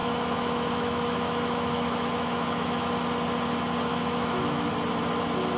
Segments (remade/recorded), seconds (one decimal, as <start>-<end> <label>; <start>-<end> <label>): 0.0-2.9 remade; 2.9-3.9 recorded; 3.9-4.7 remade; 4.7-5.6 recorded